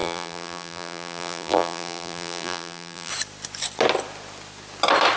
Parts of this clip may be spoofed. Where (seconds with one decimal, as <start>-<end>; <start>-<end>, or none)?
0.0-3.1